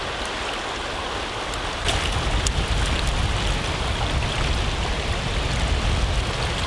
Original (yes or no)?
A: yes